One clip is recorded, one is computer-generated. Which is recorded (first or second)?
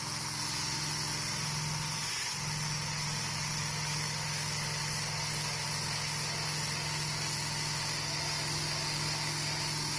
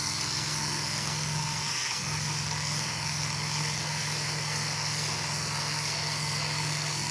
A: first